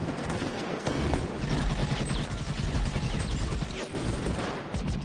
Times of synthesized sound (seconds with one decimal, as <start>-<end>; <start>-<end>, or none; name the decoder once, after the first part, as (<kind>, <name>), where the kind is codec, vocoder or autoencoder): 0.0-1.2 (codec, SNAC)